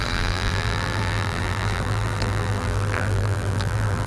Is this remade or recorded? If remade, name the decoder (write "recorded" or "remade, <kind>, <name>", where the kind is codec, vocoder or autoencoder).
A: remade, vocoder, BigVGAN v2